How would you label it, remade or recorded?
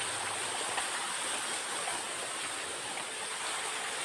recorded